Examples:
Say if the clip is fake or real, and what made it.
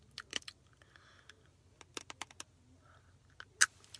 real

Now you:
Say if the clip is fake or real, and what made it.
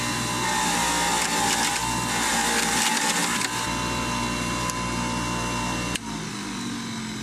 real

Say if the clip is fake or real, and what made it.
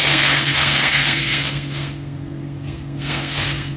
fake, codec, SNAC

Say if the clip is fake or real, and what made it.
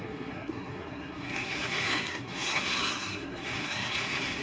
fake, codec, SNAC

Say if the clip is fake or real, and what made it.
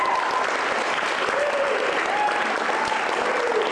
real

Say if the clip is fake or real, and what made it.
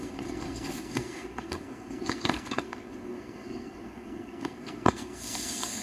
fake, codec, SNAC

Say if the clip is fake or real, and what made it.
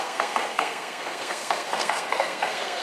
fake, codec, SNAC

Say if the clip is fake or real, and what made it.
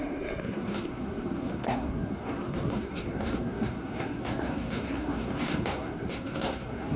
fake, codec, SNAC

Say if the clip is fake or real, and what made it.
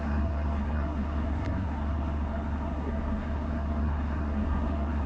fake, codec, SNAC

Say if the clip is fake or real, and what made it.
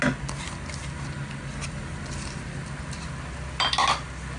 real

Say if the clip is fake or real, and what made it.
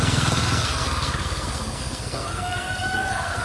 fake, codec, SNAC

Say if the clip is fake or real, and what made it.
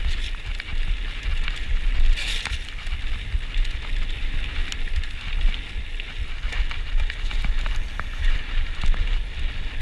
real